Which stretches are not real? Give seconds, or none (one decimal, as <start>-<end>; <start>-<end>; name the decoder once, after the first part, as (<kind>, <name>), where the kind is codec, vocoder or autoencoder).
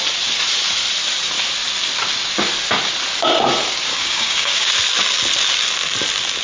3.9-4.7 (codec, DAC)